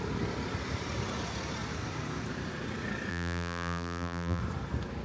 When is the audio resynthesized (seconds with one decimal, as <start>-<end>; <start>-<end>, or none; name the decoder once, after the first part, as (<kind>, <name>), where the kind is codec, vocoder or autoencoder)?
3.1-4.4 (vocoder, BigVGAN v2)